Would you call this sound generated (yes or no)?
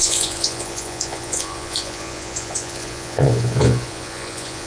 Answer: yes